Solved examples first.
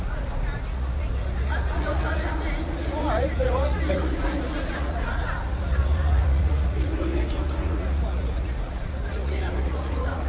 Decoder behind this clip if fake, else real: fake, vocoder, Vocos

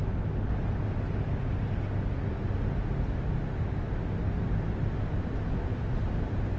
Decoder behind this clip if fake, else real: real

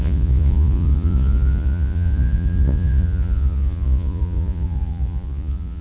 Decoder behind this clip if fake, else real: fake, vocoder, Vocos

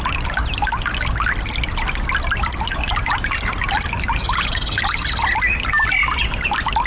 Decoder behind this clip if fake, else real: real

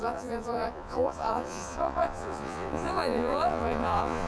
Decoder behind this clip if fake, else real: fake, vocoder, Vocos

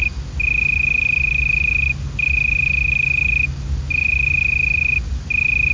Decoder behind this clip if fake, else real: real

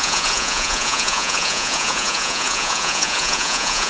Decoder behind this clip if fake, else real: fake, vocoder, Vocos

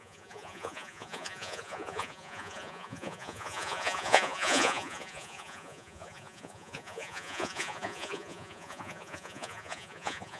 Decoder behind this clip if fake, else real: fake, vocoder, Vocos